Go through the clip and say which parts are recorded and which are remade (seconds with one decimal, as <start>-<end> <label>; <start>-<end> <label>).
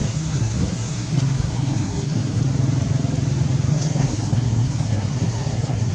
0.0-2.4 remade; 2.4-3.7 recorded; 3.7-5.9 remade